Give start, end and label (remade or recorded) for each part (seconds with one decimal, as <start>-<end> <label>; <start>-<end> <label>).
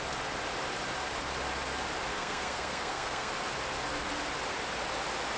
0.0-2.1 recorded; 2.1-3.3 remade; 3.3-5.4 recorded